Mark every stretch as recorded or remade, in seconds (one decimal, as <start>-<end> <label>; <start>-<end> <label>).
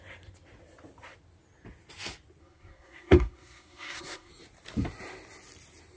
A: 0.0-2.4 recorded; 2.4-4.3 remade; 4.3-6.0 recorded